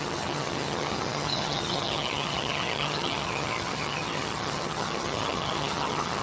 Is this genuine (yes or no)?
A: no